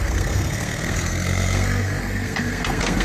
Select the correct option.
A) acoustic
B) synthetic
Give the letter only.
B